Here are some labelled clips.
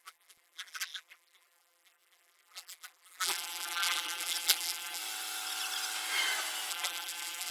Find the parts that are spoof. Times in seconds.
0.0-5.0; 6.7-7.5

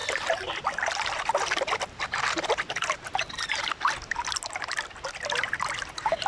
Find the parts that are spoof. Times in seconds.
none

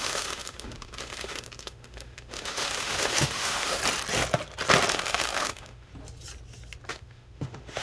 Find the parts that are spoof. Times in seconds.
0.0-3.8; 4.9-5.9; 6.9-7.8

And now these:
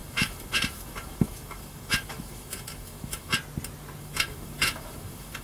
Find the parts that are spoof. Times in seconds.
0.0-3.3; 4.0-5.4

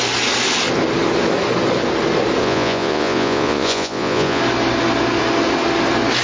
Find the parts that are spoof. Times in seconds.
2.4-4.4

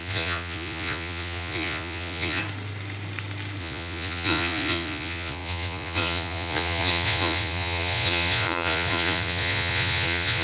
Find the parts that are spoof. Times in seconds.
0.0-2.4; 3.6-10.4